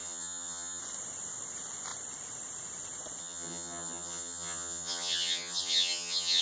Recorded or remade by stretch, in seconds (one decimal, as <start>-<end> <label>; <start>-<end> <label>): 0.0-0.8 remade; 0.8-3.2 recorded; 3.2-6.4 remade